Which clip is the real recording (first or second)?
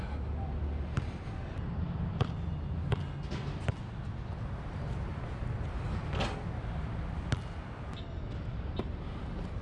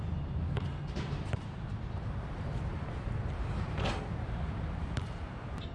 first